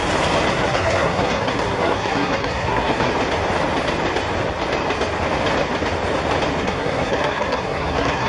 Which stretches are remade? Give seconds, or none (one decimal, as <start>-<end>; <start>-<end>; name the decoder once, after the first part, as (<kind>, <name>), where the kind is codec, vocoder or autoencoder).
0.5-3.1 (codec, SNAC); 6.6-8.3